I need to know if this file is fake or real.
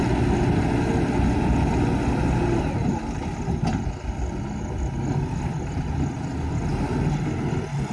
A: real